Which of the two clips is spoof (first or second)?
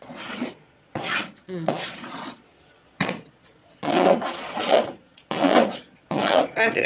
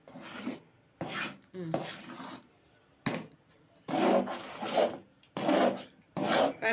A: first